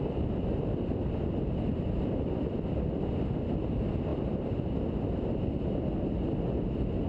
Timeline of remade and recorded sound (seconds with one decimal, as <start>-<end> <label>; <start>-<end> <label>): 0.0-7.1 recorded